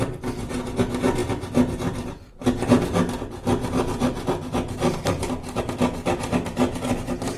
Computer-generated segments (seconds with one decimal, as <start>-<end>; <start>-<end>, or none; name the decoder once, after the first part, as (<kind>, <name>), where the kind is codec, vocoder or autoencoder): none